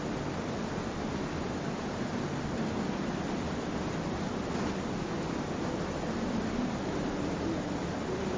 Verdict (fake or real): real